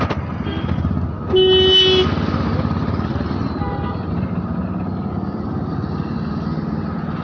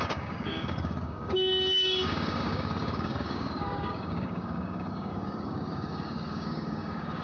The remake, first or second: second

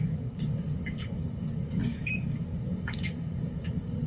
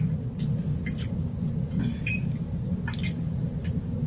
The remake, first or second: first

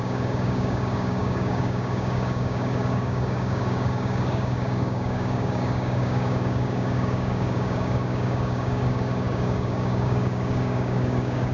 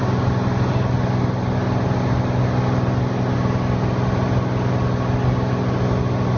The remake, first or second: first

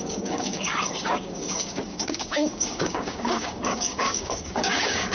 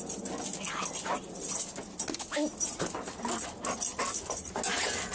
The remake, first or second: first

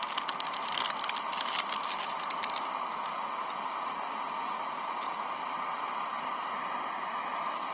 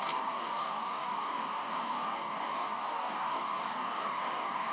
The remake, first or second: second